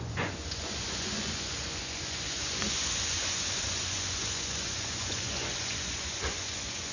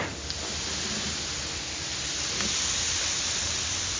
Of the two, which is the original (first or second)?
second